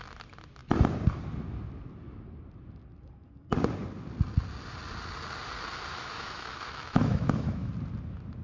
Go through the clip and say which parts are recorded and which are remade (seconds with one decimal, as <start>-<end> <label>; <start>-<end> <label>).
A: 0.0-5.9 recorded; 5.9-7.7 remade; 7.7-8.4 recorded